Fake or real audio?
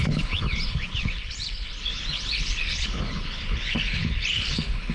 fake